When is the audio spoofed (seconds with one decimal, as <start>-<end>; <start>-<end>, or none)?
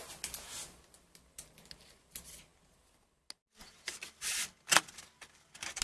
none